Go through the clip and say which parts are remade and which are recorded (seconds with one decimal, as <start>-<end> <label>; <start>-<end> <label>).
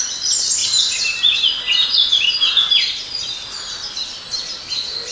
0.0-5.1 recorded